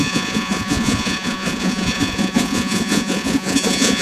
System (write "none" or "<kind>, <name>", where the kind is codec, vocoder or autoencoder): vocoder, Vocos